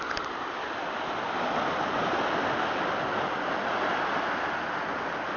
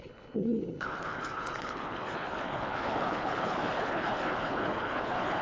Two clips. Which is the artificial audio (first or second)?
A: second